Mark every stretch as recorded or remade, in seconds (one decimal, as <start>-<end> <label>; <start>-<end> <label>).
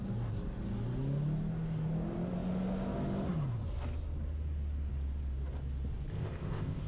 0.0-6.1 recorded; 6.1-6.9 remade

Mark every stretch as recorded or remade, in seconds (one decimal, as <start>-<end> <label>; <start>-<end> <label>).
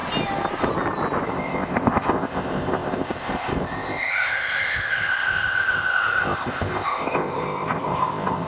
0.0-1.3 recorded; 1.3-8.5 remade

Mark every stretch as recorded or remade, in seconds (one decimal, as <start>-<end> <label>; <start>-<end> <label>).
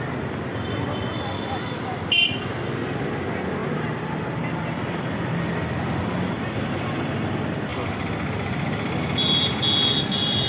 0.0-10.5 recorded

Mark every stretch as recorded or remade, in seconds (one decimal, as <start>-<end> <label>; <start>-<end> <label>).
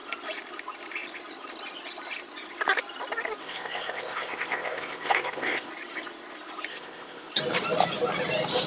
0.0-3.4 recorded; 3.4-5.7 remade; 5.7-6.7 recorded; 6.7-7.3 remade; 7.3-8.7 recorded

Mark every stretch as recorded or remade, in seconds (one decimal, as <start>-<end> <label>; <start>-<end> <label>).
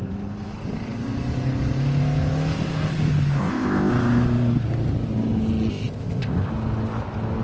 0.0-3.4 recorded; 3.4-3.9 remade; 3.9-5.7 recorded; 5.7-6.5 remade; 6.5-7.4 recorded